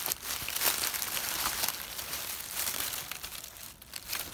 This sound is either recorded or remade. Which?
recorded